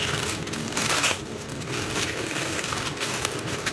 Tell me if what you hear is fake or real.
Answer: fake